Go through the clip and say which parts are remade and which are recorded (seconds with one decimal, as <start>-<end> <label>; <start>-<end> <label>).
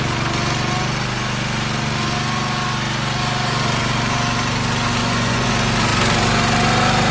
0.0-5.0 recorded; 5.0-5.5 remade; 5.5-7.1 recorded